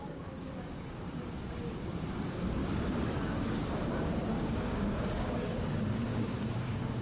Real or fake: fake